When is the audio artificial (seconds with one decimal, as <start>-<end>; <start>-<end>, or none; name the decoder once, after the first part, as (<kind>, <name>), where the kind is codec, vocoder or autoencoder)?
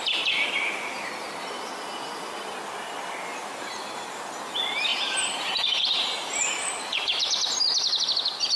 0.0-1.1 (vocoder, BigVGAN v2); 3.3-4.2; 4.9-7.6